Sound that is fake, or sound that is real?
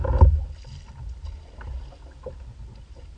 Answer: real